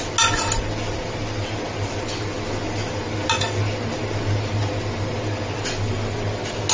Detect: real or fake real